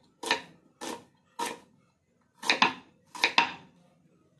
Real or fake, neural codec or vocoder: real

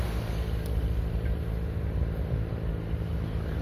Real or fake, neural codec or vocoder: real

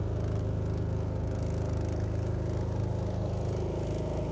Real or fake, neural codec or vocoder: real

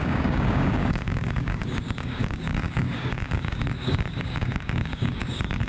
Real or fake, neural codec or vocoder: fake, codec, DAC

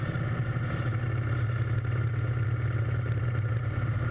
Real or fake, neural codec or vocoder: real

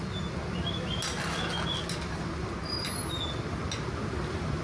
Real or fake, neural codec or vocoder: real